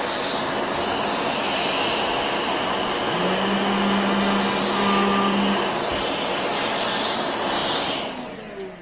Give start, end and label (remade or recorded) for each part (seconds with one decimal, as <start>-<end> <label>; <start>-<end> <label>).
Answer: 0.0-8.8 recorded